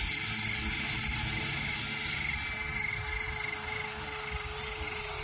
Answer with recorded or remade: recorded